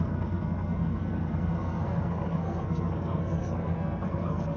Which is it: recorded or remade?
remade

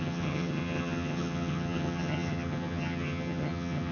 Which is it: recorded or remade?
remade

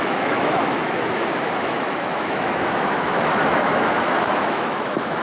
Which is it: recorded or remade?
remade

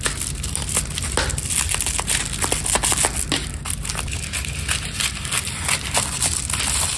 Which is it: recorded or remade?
recorded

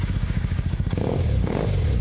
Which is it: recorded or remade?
remade